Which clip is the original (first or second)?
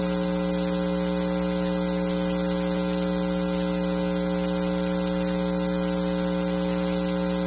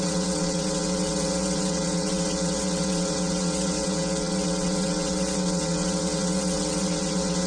first